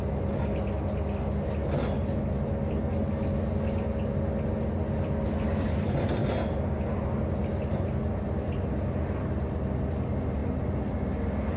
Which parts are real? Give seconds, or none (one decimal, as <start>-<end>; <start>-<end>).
0.0-11.6